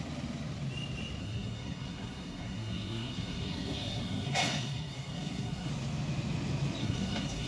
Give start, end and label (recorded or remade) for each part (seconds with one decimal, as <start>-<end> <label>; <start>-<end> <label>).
0.0-1.2 recorded; 1.2-5.7 remade; 5.7-6.8 recorded; 6.8-7.5 remade